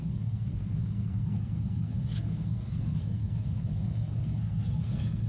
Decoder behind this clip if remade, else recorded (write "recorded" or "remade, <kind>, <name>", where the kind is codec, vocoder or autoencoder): remade, codec, SNAC